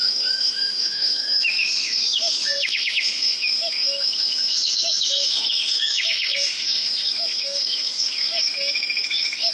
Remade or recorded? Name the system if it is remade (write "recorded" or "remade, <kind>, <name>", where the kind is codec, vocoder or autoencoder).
remade, autoencoder, DAC-VAE